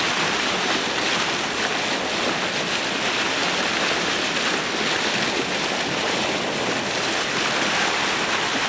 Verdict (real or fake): real